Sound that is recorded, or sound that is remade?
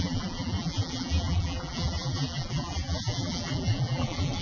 remade